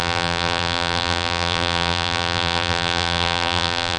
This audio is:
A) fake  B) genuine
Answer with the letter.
A